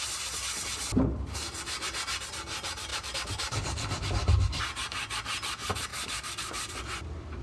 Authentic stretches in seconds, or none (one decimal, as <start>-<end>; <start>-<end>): 0.0-2.9; 4.6-5.9; 6.7-7.4